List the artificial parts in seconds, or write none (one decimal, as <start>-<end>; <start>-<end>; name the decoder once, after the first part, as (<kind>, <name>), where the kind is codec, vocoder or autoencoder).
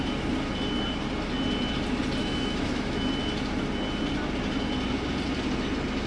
2.2-3.1 (autoencoder, DAC-VAE)